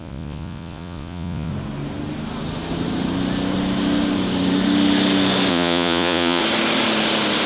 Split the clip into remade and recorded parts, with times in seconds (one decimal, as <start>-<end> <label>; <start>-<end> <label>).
0.0-1.5 remade; 1.5-5.5 recorded; 5.5-6.4 remade; 6.4-7.5 recorded